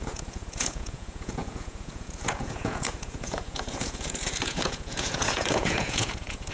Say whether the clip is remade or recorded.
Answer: remade